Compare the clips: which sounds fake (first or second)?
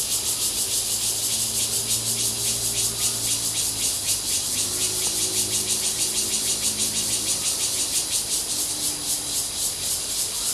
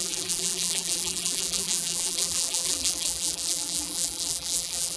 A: second